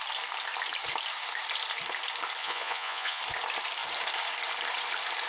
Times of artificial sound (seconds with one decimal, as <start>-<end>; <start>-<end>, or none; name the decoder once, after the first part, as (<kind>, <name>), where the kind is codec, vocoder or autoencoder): 2.4-3.2 (vocoder, Vocos)